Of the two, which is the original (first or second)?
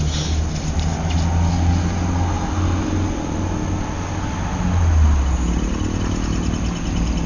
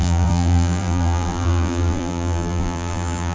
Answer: first